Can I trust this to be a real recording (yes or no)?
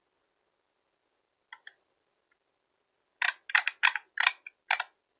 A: yes